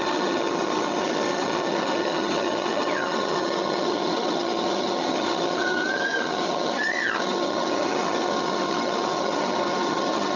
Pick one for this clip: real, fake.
fake